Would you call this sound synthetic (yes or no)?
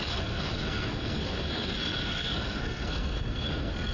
yes